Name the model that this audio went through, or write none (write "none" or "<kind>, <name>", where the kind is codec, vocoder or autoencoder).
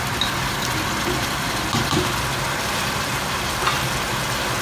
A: none